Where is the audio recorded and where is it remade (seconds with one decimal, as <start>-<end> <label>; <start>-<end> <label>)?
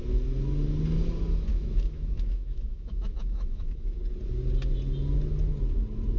0.0-1.5 recorded; 1.5-4.0 remade; 4.0-6.2 recorded